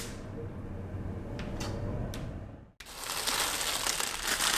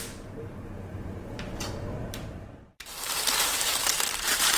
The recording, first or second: first